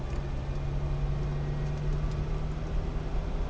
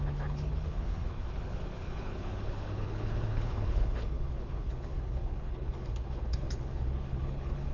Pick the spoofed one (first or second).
second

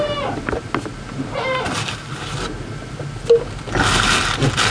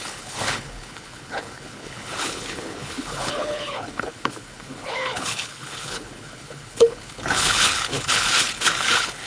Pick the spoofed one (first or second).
second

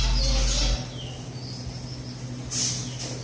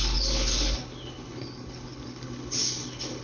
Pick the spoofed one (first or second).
second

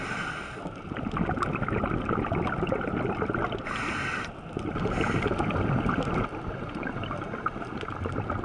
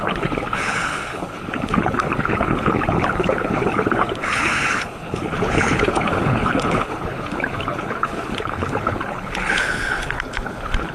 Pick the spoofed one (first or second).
second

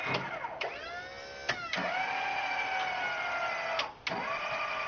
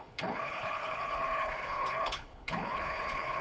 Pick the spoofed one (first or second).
second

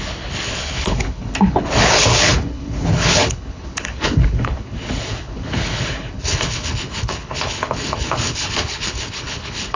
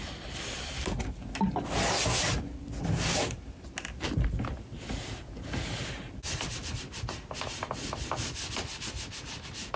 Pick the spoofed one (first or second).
first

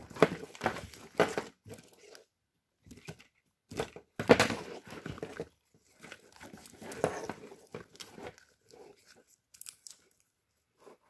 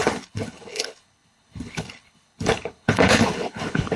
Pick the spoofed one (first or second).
second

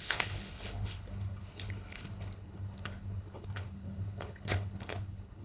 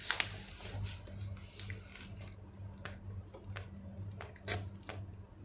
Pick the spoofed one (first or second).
first